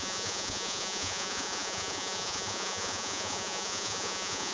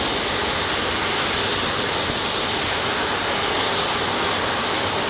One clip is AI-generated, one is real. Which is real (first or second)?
second